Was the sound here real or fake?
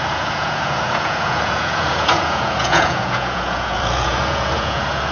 fake